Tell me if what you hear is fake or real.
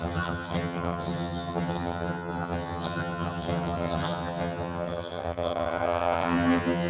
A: fake